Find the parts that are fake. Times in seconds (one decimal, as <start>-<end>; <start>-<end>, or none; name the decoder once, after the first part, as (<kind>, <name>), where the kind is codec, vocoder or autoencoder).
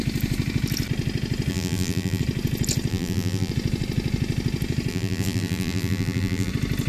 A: 1.5-2.2 (vocoder, BigVGAN v2); 2.9-3.5; 4.9-6.5